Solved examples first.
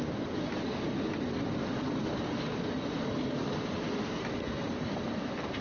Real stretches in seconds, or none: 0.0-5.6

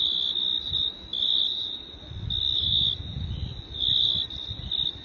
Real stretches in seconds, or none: 0.0-5.0

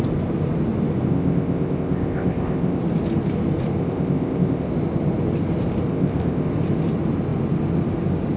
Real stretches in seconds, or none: 0.0-1.1; 2.8-3.8; 4.7-5.9; 6.5-8.4

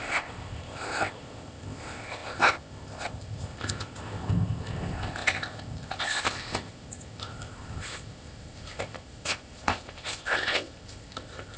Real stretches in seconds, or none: none

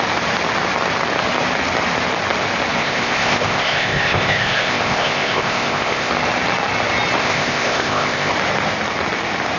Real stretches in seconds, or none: 0.0-2.8; 6.1-7.2; 8.3-9.6

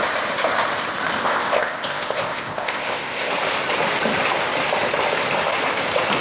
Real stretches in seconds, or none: 0.0-1.2; 3.3-6.2